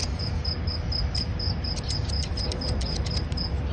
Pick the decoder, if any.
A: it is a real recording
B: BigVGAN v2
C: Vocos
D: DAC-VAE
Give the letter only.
A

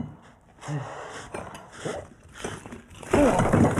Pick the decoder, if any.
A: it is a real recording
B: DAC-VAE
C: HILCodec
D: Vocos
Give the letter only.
A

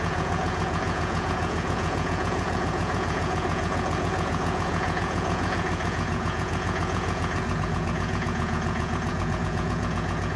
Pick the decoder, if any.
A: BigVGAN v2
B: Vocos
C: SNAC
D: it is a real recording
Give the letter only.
B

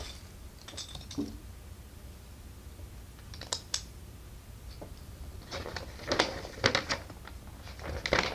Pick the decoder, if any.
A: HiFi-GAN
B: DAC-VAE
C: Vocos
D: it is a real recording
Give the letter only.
D